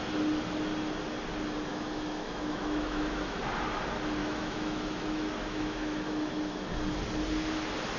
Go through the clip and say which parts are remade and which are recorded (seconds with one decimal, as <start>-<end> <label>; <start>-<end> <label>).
0.0-1.7 recorded; 1.7-3.4 remade; 3.4-4.2 recorded; 4.2-6.7 remade; 6.7-8.0 recorded